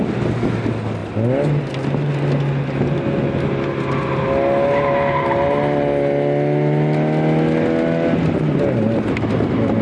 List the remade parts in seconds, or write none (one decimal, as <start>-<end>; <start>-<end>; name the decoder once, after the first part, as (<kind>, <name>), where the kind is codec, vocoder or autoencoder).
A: none